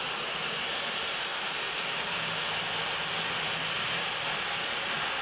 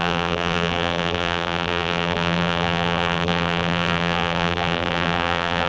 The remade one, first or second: second